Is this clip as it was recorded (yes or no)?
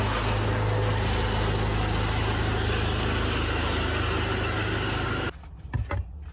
yes